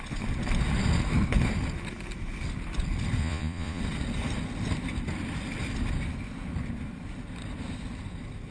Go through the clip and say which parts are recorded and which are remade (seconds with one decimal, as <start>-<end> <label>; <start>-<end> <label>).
0.0-3.2 recorded; 3.2-3.8 remade; 3.8-8.5 recorded

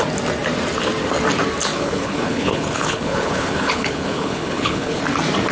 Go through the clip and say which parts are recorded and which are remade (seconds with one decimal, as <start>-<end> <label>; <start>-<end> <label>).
0.0-1.7 recorded; 1.7-5.0 remade; 5.0-5.5 recorded